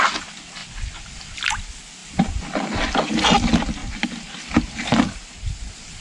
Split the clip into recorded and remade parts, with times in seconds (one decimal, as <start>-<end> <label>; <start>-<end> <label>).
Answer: 0.0-2.0 recorded; 2.0-3.4 remade; 3.4-3.8 recorded; 3.8-5.0 remade; 5.0-6.0 recorded